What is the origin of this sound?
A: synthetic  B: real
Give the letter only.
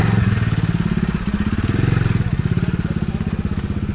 B